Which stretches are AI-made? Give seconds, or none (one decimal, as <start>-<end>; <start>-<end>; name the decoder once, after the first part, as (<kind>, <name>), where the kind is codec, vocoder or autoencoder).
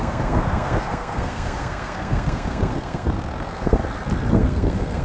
0.0-3.8 (codec, SNAC); 4.3-5.0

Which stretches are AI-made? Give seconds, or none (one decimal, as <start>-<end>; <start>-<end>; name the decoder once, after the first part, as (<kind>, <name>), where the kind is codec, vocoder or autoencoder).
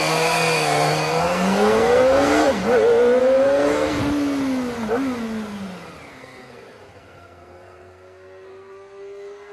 0.0-2.6 (codec, SNAC); 3.2-4.0; 6.1-9.5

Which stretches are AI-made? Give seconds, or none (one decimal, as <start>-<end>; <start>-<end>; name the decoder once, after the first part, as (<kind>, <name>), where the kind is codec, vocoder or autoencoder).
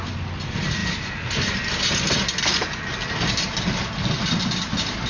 none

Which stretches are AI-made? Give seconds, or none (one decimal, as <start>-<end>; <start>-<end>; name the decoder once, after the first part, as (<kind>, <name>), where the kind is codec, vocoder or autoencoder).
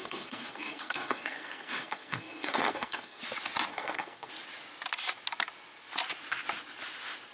0.0-3.2 (codec, SNAC); 3.7-4.3